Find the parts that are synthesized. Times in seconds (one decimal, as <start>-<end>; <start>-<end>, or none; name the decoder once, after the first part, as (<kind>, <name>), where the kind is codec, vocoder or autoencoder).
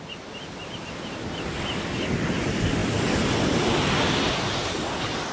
0.6-1.5 (vocoder, BigVGAN v2)